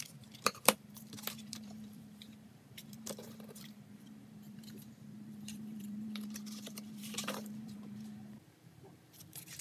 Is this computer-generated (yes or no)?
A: yes